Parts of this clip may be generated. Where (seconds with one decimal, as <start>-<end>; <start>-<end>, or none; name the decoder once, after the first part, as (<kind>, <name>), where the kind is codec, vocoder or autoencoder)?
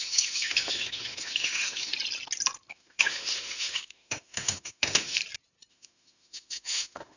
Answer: 0.0-1.9 (autoencoder, DAC-VAE); 2.7-5.2; 5.7-7.2